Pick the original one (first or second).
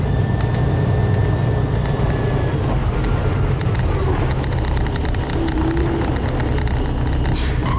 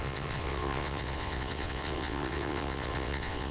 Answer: first